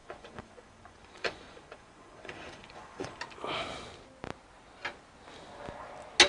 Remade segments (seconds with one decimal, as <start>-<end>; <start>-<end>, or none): 0.0-3.2